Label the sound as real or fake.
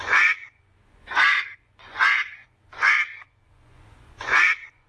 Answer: fake